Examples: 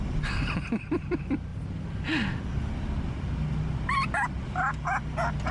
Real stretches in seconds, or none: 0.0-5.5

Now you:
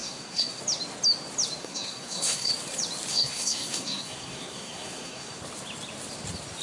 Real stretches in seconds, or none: 0.6-1.6; 2.5-3.1; 5.4-6.6

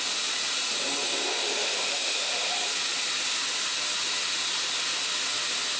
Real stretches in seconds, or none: 0.0-1.3; 2.3-5.8

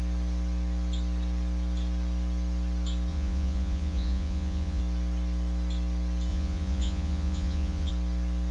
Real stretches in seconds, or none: 0.0-3.1; 4.8-6.3; 7.9-8.5

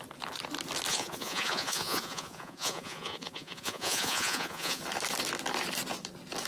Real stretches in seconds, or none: 0.0-0.9; 4.8-6.5

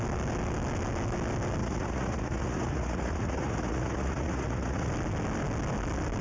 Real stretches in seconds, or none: 0.0-1.6; 4.9-6.2

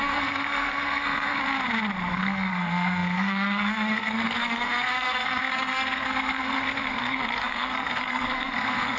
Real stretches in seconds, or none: 1.4-2.1